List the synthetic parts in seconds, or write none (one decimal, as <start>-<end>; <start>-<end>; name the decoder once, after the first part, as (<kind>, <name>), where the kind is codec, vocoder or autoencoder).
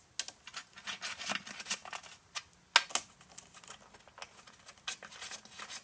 none